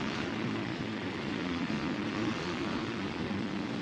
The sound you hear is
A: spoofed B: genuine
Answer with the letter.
A